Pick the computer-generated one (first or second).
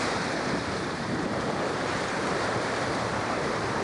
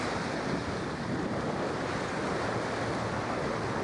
first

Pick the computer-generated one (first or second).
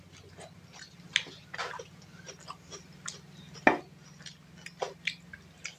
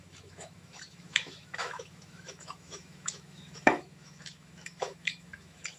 second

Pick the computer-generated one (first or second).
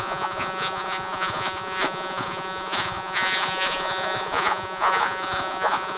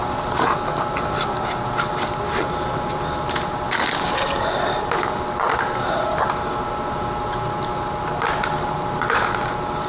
first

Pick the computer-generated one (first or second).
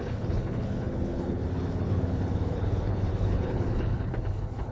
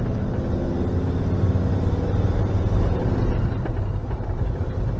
first